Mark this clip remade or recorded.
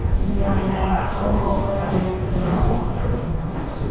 remade